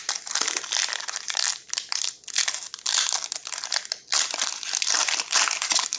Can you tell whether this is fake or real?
real